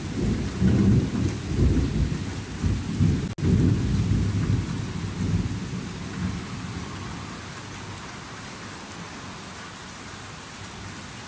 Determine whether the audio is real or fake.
real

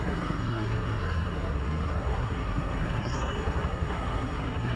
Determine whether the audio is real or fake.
fake